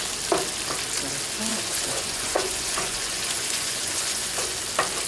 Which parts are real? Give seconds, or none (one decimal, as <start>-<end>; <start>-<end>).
0.0-1.5; 4.6-5.1